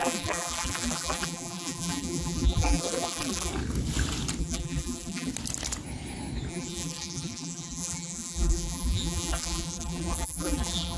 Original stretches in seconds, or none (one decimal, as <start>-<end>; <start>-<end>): 3.5-4.4; 5.3-6.5